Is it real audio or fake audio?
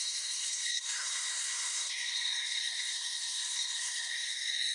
fake